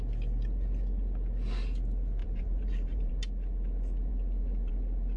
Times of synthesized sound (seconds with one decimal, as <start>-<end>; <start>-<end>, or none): 2.2-3.1